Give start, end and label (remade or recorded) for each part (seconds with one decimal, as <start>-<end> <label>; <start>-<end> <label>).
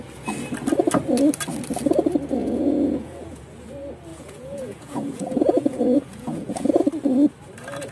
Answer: 0.0-2.4 recorded; 2.4-3.4 remade; 3.4-4.1 recorded; 4.1-6.8 remade; 6.8-7.9 recorded